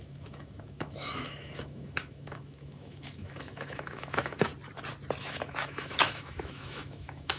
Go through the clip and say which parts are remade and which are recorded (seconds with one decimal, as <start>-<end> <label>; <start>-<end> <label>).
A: 0.0-4.5 remade; 4.5-5.2 recorded; 5.2-7.4 remade